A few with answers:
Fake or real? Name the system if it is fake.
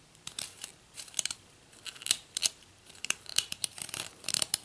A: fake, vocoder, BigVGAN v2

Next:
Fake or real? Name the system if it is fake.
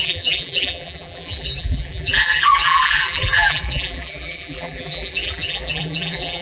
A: fake, vocoder, BigVGAN v2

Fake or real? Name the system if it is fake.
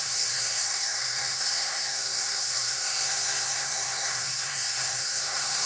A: fake, codec, SNAC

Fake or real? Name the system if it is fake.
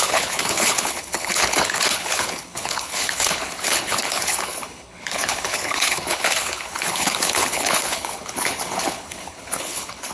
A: fake, codec, HILCodec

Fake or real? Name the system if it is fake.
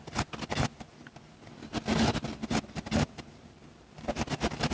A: real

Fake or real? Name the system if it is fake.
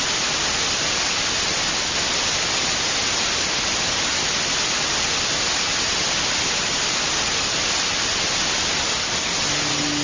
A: real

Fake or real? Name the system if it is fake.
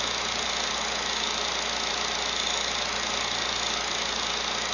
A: real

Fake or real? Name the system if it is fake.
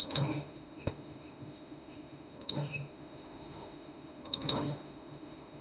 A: fake, autoencoder, DAC-VAE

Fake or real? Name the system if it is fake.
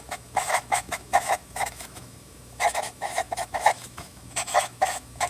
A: fake, autoencoder, DAC-VAE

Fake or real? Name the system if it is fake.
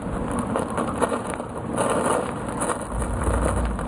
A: real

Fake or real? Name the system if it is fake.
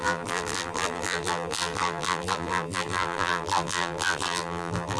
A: fake, vocoder, BigVGAN v2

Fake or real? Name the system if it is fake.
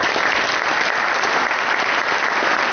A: real